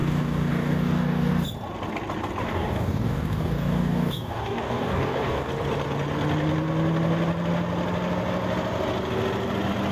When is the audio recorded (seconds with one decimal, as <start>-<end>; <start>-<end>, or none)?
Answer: 1.3-2.4; 5.5-9.9